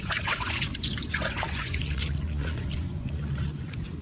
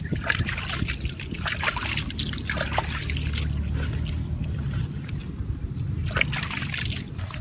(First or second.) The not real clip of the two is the first